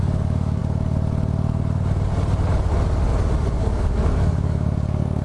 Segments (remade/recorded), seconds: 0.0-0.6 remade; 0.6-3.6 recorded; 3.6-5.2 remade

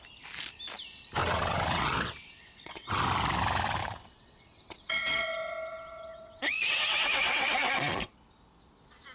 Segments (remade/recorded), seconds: 0.0-1.2 recorded; 1.2-3.0 remade; 3.0-3.8 recorded; 3.8-8.1 remade; 8.1-9.1 recorded

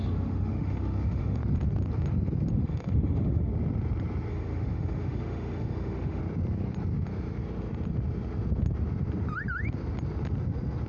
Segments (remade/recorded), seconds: 0.0-1.4 remade; 1.4-2.5 recorded; 2.5-3.5 remade; 3.5-4.3 recorded; 4.3-6.2 remade; 6.2-10.9 recorded

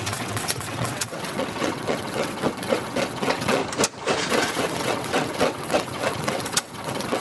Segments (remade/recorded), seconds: 0.0-3.6 remade; 3.6-4.3 recorded; 4.3-7.2 remade

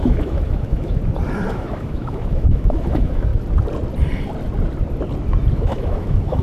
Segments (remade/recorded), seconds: 0.0-1.0 remade; 1.0-1.5 recorded; 1.5-3.3 remade; 3.3-5.5 recorded; 5.5-6.4 remade